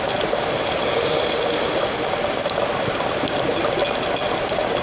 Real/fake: real